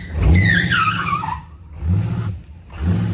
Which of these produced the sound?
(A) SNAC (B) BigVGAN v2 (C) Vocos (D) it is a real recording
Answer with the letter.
D